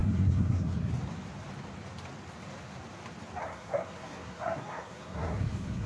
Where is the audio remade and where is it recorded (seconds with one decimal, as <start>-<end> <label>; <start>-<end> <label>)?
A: 0.0-0.9 remade; 0.9-3.4 recorded; 3.4-5.9 remade